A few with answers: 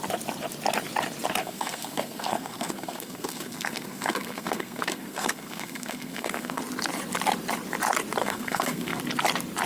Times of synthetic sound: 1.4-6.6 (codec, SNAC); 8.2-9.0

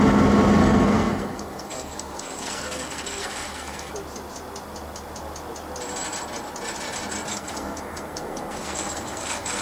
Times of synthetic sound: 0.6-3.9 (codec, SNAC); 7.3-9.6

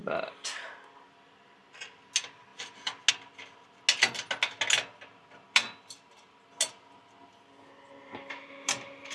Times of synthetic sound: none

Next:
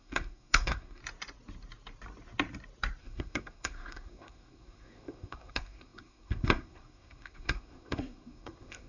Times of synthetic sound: 0.0-1.0 (codec, SNAC); 3.0-8.9

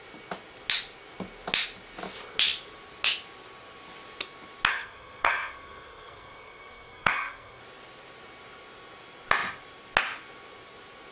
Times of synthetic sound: 4.7-7.6 (codec, SNAC)